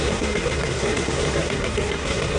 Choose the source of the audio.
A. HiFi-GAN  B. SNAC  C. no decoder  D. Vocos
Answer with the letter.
B